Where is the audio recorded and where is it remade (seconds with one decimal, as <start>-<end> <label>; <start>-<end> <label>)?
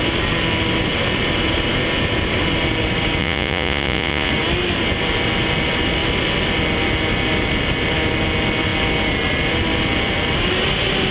0.0-3.2 recorded; 3.2-4.3 remade; 4.3-11.1 recorded